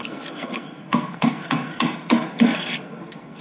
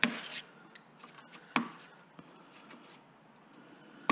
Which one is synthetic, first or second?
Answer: first